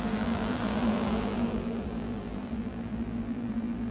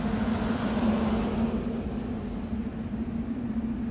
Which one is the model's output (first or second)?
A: first